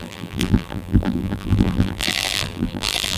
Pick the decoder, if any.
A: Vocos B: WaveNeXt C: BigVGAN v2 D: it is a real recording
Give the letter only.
C